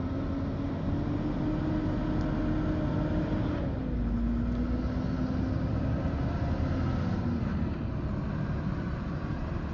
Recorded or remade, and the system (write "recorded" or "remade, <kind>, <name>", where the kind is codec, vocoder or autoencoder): recorded